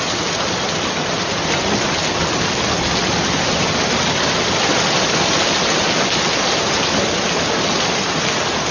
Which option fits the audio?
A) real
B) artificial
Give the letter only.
A